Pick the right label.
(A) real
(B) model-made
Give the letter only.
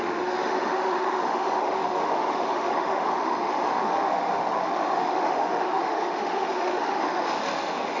B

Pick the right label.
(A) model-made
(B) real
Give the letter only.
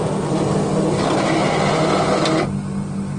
B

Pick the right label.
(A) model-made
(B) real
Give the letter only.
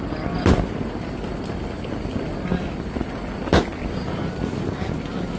B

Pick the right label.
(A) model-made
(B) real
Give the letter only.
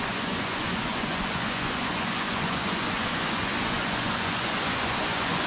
A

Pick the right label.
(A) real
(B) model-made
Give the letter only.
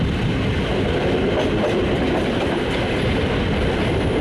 A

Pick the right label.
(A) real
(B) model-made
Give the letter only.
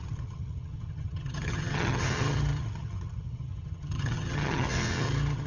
B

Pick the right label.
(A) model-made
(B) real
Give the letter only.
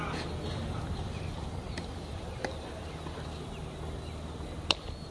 B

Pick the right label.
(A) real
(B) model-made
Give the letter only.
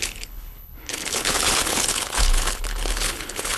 B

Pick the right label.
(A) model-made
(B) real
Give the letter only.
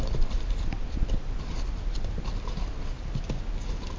B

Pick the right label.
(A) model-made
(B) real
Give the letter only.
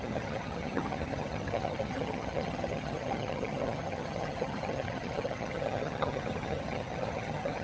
A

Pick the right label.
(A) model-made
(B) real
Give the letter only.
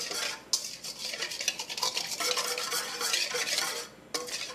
B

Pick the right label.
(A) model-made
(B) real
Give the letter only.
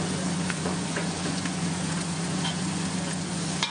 A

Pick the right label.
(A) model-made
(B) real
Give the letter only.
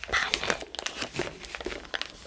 B